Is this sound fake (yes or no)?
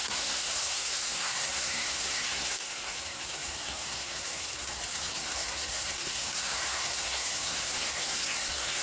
yes